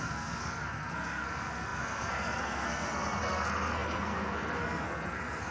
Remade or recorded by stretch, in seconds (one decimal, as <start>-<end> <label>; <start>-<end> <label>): 0.0-5.5 remade